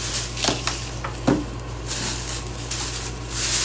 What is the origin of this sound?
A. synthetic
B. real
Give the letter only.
B